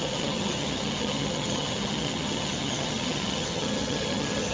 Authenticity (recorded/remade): remade